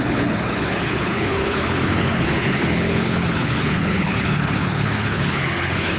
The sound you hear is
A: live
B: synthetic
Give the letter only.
B